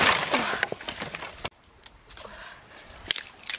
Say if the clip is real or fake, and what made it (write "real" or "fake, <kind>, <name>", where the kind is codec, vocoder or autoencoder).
real